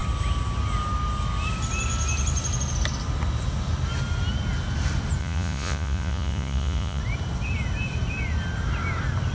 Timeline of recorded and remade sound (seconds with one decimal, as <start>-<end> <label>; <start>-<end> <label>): 0.0-5.2 recorded; 5.2-7.0 remade; 7.0-9.3 recorded

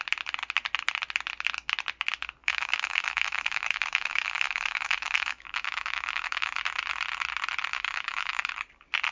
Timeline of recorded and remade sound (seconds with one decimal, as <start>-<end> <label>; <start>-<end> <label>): 0.0-2.4 recorded; 2.4-6.6 remade; 6.6-7.7 recorded; 7.7-8.5 remade; 8.5-9.1 recorded

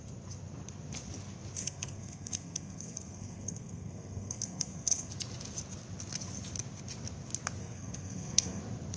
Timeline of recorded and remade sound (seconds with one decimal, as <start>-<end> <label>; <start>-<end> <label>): 0.0-1.6 recorded; 1.6-5.1 remade; 5.1-7.6 recorded; 7.6-8.6 remade; 8.6-9.0 recorded